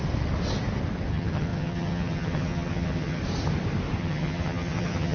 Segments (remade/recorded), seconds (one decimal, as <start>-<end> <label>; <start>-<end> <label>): 0.0-1.1 recorded; 1.1-3.2 remade; 3.2-4.0 recorded; 4.0-5.1 remade